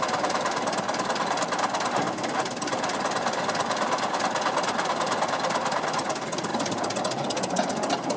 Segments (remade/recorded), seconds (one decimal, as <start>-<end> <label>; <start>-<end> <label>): 0.0-8.2 recorded